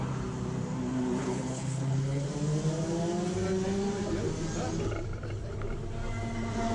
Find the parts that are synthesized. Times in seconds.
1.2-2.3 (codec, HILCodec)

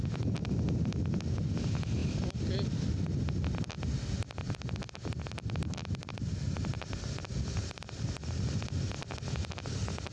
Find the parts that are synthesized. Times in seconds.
none

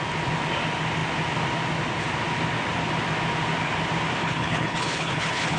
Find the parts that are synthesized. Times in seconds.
4.2-5.6 (codec, HILCodec)

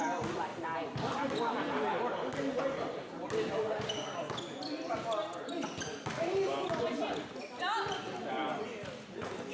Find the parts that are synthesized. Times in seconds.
none

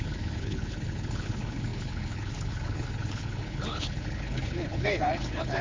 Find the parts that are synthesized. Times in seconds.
0.0-5.6 (codec, HILCodec)